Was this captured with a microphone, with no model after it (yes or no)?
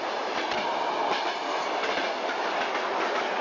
yes